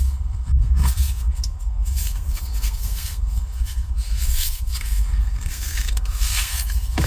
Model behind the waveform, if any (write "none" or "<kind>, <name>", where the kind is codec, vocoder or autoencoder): codec, SNAC